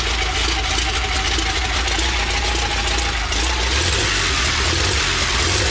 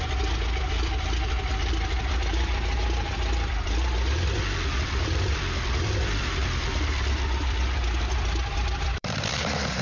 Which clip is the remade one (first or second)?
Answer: second